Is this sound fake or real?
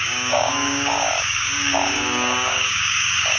fake